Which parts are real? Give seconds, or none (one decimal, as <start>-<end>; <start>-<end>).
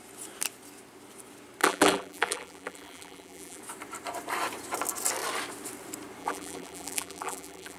0.0-1.6; 3.6-6.2